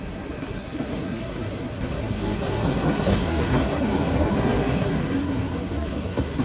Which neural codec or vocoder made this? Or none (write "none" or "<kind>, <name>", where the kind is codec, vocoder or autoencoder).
codec, SNAC